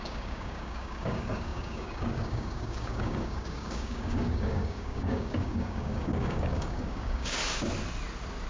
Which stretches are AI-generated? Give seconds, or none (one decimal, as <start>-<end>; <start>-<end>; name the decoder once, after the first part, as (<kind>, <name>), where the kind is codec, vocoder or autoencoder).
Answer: 0.0-7.4 (codec, DAC)